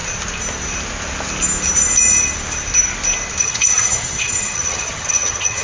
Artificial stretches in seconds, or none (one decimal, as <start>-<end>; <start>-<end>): 3.4-5.6